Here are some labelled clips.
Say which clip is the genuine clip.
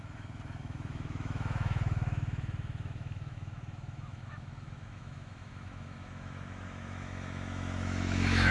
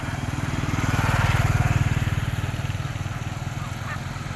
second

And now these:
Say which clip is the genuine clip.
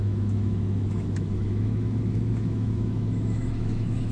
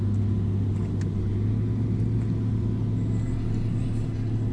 second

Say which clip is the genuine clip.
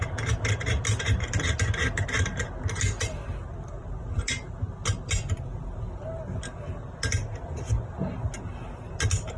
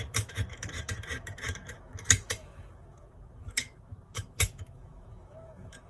first